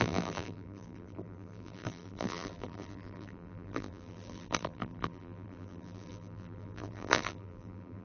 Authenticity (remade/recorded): remade